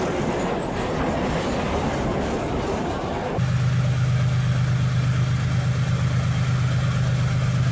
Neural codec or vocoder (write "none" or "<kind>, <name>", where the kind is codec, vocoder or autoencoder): none